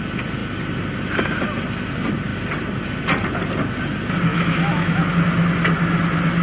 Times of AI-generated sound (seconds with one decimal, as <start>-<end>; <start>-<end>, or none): 4.3-5.1